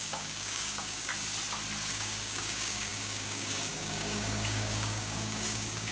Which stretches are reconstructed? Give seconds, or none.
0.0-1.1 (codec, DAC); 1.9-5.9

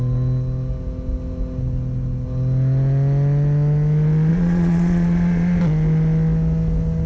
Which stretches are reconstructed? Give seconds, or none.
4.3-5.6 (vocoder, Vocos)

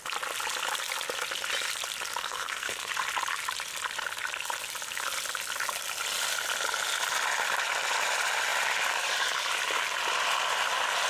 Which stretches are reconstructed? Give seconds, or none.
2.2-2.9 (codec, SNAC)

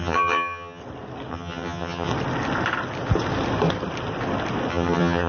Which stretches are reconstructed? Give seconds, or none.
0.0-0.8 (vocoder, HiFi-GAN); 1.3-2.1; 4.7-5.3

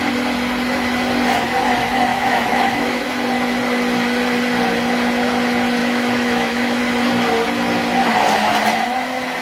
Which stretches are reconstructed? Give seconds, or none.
2.1-3.1 (autoencoder, DAC-VAE); 5.8-6.8